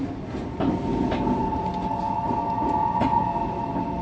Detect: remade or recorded recorded